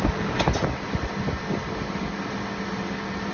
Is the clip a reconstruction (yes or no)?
no